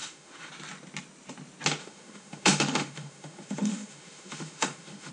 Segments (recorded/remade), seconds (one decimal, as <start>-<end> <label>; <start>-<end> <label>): 0.0-0.5 remade; 0.5-1.8 recorded; 1.8-5.1 remade